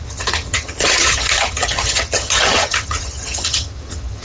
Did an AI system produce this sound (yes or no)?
yes